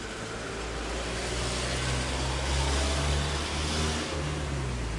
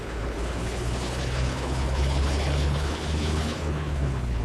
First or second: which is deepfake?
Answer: second